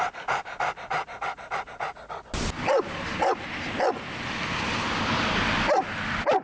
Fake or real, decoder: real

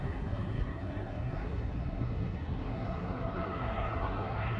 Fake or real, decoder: fake, codec, SNAC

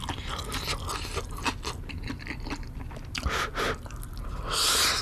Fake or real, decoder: real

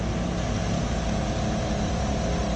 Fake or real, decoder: real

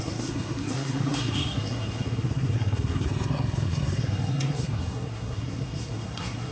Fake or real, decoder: fake, codec, SNAC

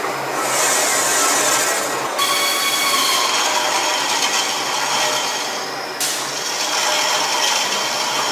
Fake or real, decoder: real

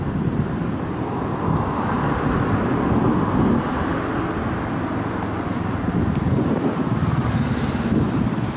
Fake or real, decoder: real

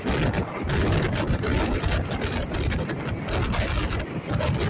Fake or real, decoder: real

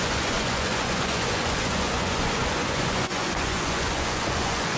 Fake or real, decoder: fake, vocoder, Vocos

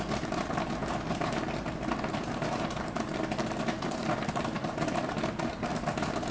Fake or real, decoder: fake, vocoder, BigVGAN v2